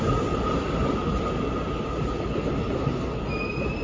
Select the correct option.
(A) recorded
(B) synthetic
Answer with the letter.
A